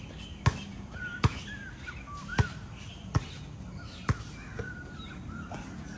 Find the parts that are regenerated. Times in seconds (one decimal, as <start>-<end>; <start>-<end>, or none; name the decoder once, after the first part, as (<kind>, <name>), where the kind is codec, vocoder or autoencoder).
0.7-1.4 (vocoder, Vocos)